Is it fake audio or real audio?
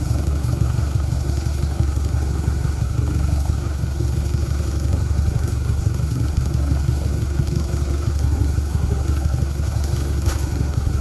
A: fake